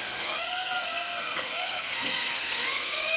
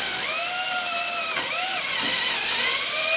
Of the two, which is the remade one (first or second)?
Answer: first